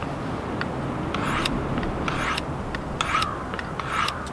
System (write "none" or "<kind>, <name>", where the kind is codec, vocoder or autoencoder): none